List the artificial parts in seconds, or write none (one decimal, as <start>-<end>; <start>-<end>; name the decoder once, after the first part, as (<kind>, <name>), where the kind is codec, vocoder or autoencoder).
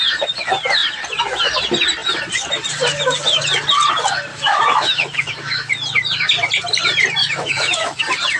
4.3-5.7 (autoencoder, DAC-VAE); 7.2-8.0